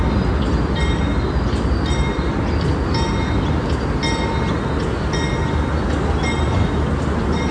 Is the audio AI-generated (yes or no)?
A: no